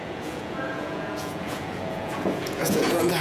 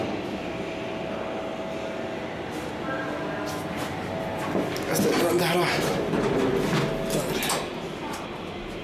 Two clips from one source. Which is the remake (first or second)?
first